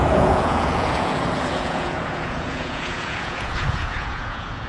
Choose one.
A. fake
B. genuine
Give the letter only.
A